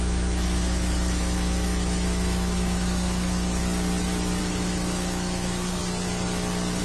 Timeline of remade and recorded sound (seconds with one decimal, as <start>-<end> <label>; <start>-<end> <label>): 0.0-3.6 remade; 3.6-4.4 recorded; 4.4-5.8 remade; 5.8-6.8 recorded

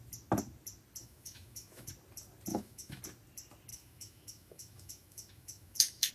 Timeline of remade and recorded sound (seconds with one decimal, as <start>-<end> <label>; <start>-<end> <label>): 0.0-1.0 recorded; 1.0-1.9 remade; 1.9-2.5 recorded; 2.5-3.0 remade; 3.0-3.7 recorded; 3.7-6.1 remade

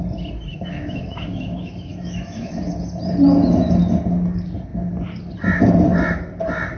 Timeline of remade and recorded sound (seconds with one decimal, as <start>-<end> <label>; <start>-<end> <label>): 0.0-0.5 recorded; 0.5-2.6 remade; 2.6-6.8 recorded

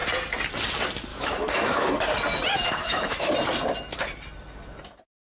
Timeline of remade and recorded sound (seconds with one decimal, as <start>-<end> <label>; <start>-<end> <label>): 0.0-1.1 recorded; 1.1-1.9 remade; 1.9-2.6 recorded; 2.6-3.3 remade; 3.3-5.2 recorded

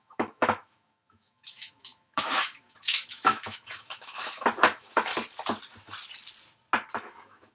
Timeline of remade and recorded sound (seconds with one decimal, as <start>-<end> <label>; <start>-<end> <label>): 0.0-5.1 remade; 5.1-7.0 recorded; 7.0-7.5 remade